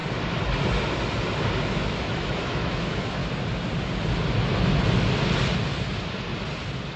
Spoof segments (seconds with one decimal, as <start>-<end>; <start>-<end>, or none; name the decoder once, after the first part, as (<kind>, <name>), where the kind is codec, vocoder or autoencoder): 1.6-3.2 (autoencoder, DAC-VAE)